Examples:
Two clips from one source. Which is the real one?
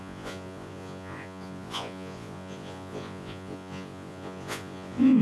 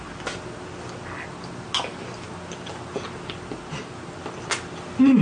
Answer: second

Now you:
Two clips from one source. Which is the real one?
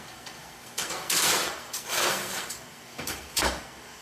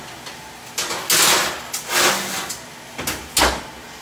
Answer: second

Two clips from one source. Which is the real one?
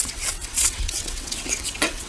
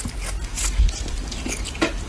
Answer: second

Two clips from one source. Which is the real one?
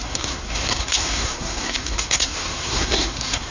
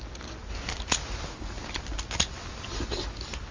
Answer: second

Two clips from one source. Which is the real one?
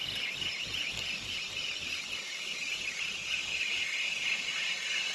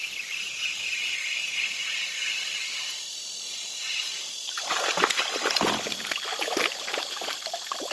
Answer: first